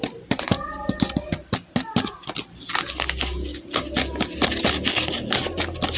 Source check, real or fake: real